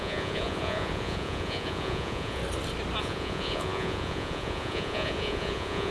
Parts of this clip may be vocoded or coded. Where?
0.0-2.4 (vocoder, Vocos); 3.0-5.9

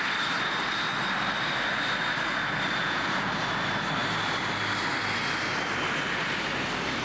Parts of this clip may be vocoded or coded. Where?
2.8-3.3 (vocoder, Vocos)

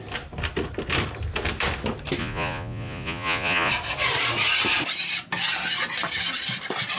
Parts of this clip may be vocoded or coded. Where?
2.2-3.7 (vocoder, Vocos)

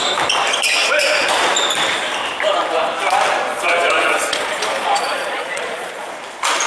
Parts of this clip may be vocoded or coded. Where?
3.5-6.1 (vocoder, Vocos)

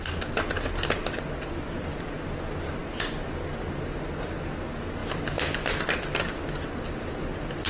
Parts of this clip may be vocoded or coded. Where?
none

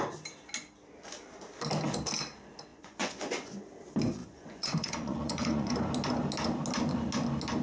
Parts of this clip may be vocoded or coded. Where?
2.7-3.6 (vocoder, Vocos); 4.2-5.7